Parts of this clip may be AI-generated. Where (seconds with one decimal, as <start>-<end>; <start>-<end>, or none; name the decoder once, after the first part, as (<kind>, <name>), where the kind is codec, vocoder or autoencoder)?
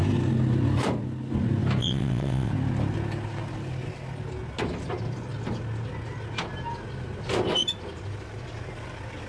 1.8-2.5 (vocoder, WaveNeXt)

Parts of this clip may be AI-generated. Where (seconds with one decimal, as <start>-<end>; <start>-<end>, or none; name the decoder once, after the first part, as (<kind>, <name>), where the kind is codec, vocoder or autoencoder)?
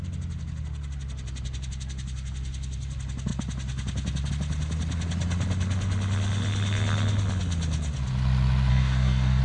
8.7-9.4 (codec, DAC)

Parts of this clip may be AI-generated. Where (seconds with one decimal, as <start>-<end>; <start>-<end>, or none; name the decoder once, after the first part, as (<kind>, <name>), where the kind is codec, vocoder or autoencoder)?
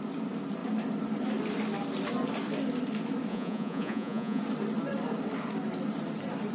3.3-4.4 (vocoder, Vocos)